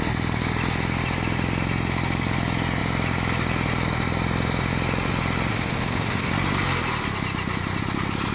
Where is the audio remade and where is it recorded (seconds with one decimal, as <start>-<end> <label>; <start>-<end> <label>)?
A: 0.0-5.5 recorded; 5.5-6.3 remade; 6.3-8.3 recorded